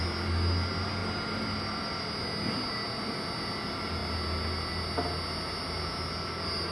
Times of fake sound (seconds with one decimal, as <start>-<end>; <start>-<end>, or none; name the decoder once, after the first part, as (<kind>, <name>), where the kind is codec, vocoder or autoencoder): 1.0-2.1 (vocoder, BigVGAN v2)